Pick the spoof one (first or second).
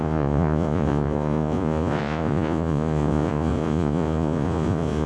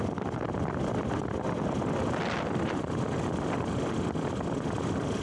first